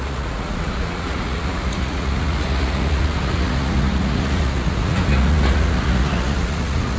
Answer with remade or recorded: remade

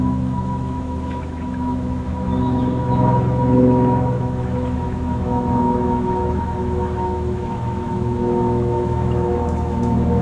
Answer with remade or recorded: remade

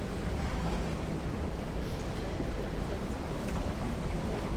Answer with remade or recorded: recorded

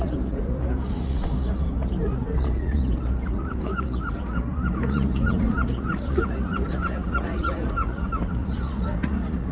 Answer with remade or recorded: remade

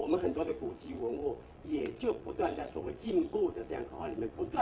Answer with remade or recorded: remade